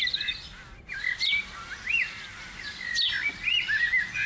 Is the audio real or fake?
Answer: fake